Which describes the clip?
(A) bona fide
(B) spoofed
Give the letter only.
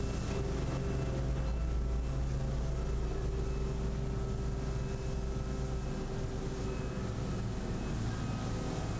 A